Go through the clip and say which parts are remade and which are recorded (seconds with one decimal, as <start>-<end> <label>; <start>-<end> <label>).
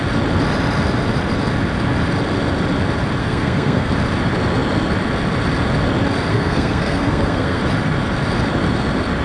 0.0-3.2 recorded; 3.2-3.9 remade; 3.9-6.3 recorded; 6.3-7.6 remade; 7.6-9.2 recorded